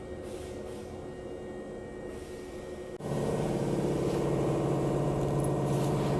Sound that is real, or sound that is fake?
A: real